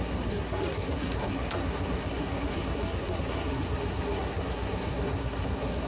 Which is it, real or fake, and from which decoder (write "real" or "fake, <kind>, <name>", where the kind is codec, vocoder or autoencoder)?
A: fake, codec, SNAC